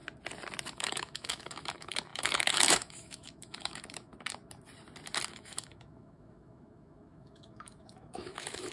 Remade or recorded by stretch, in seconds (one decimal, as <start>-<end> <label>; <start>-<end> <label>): 0.0-0.7 recorded; 0.7-4.1 remade; 4.1-5.3 recorded; 5.3-8.7 remade

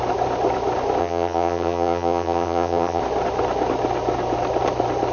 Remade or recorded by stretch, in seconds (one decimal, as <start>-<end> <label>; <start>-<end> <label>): 0.0-1.0 recorded; 1.0-3.0 remade; 3.0-5.1 recorded

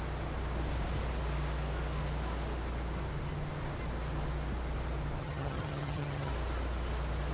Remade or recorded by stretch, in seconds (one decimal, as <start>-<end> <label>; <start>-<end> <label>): 0.0-5.2 recorded; 5.2-6.3 remade; 6.3-7.3 recorded